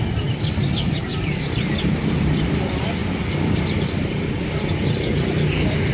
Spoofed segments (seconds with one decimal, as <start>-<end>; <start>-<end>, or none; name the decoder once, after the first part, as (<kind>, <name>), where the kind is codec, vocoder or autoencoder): none